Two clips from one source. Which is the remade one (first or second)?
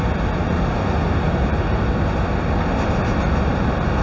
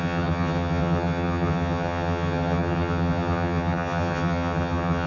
second